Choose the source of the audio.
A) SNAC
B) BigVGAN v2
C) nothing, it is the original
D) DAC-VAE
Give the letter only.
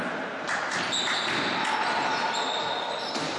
C